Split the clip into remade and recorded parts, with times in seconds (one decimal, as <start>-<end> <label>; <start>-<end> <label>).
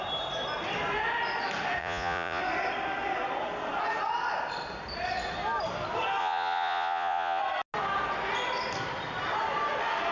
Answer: 0.0-1.8 recorded; 1.8-2.4 remade; 2.4-6.2 recorded; 6.2-7.4 remade; 7.4-10.1 recorded